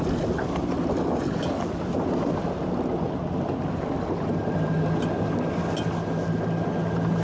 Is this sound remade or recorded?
recorded